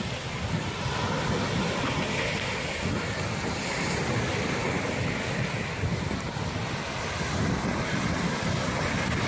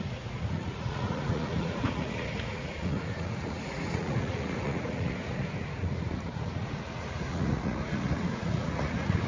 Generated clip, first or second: second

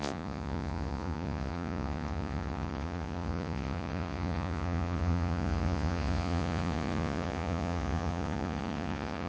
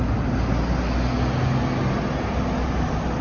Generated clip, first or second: first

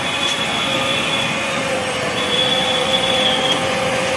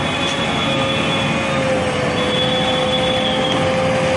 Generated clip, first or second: first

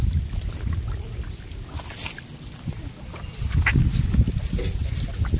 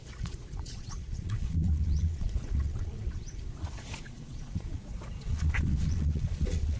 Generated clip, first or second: second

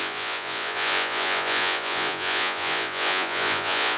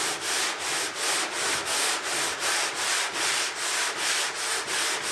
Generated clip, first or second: first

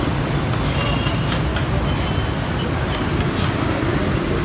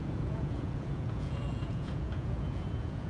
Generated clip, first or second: second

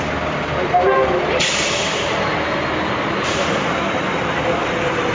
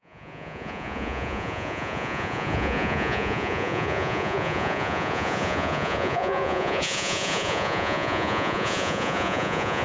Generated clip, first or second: second